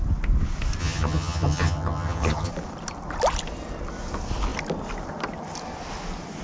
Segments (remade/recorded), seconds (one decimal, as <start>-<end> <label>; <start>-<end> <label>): 0.0-0.8 recorded; 0.8-2.5 remade; 2.5-6.4 recorded